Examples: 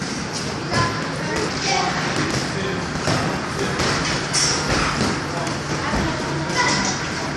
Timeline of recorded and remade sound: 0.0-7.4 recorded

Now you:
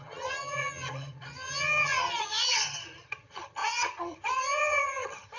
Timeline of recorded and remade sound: 0.0-5.4 remade

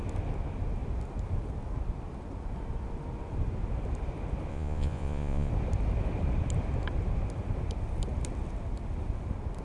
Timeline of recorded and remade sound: 0.0-4.5 recorded; 4.5-5.5 remade; 5.5-9.6 recorded

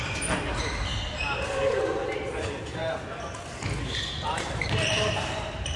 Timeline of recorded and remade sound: 0.0-0.9 remade; 0.9-1.7 recorded; 1.7-2.8 remade; 2.8-3.8 recorded; 3.8-5.8 remade

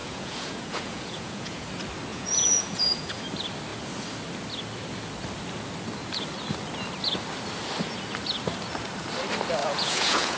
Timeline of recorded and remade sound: 0.0-1.7 remade; 1.7-2.1 recorded; 2.1-3.2 remade; 3.2-9.6 recorded; 9.6-10.4 remade

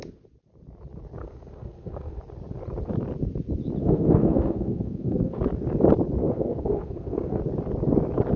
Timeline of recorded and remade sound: 0.0-1.2 recorded; 1.2-2.2 remade; 2.2-3.8 recorded; 3.8-5.4 remade; 5.4-6.2 recorded; 6.2-7.4 remade; 7.4-8.4 recorded